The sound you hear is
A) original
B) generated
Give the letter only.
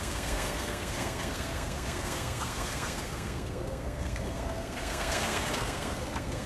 B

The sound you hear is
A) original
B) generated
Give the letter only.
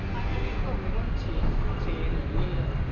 A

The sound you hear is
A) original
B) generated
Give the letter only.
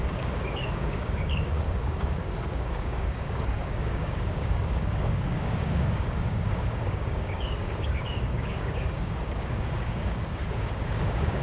B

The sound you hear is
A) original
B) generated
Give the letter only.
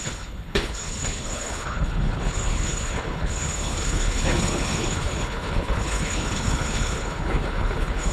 B